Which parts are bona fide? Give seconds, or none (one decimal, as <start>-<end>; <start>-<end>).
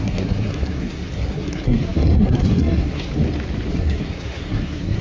3.1-3.7